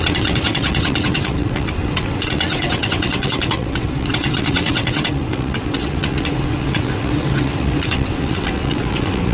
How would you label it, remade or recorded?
remade